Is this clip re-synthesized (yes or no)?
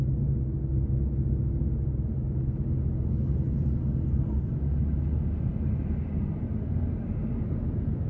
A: no